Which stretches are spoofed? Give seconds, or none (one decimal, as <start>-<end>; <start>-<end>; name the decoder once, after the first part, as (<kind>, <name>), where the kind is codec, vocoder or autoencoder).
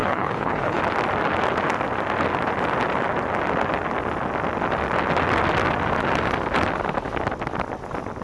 0.0-0.8 (codec, HILCodec)